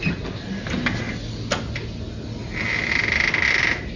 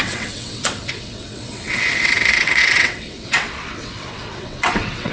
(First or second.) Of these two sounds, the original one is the first